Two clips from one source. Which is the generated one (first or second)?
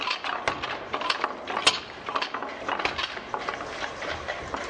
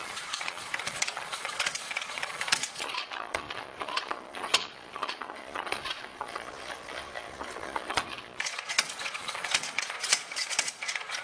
second